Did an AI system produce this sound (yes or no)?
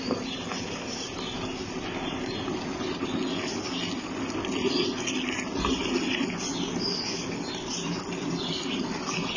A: no